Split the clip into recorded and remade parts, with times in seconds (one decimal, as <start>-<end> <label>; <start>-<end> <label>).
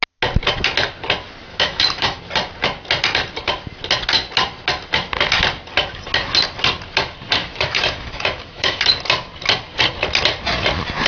0.0-1.5 recorded; 1.5-2.2 remade; 2.2-7.4 recorded; 7.4-8.8 remade; 8.8-11.1 recorded